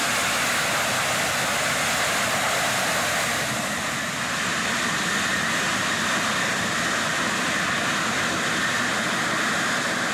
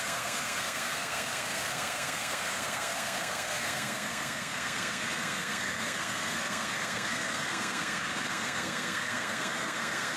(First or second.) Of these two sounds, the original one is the first